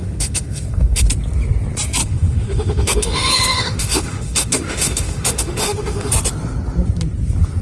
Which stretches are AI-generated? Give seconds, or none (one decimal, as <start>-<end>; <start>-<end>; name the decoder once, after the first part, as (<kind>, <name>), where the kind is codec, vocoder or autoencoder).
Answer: 0.0-1.0 (autoencoder, DAC-VAE); 2.0-6.1